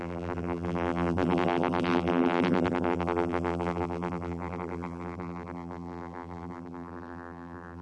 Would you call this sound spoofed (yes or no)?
yes